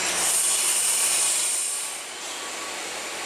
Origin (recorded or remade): recorded